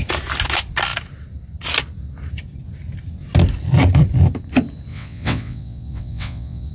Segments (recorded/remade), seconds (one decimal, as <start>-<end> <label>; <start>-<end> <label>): 0.0-4.9 recorded; 4.9-6.7 remade